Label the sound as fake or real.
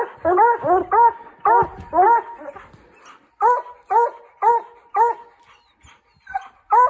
real